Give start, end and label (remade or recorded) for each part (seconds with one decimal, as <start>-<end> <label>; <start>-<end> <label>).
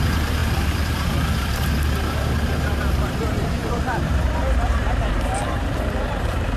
0.0-6.6 remade